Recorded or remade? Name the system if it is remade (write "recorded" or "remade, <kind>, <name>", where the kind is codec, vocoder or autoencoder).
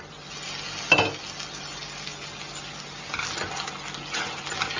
recorded